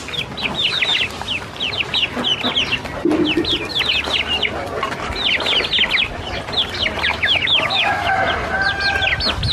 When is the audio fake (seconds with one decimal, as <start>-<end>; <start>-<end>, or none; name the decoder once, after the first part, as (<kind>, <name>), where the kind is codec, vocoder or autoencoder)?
7.1-8.1 (autoencoder, DAC-VAE)